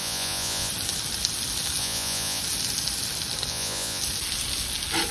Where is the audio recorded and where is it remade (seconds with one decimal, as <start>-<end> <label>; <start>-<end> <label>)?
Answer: 0.0-0.7 remade; 0.7-1.8 recorded; 1.8-2.4 remade; 2.4-3.5 recorded; 3.5-4.0 remade; 4.0-5.1 recorded